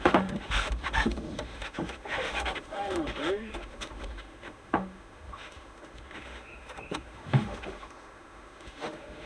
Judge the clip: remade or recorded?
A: remade